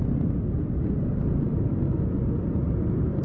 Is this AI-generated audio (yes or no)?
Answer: no